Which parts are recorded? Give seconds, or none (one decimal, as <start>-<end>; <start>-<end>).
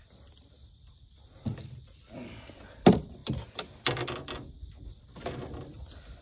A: 0.0-6.2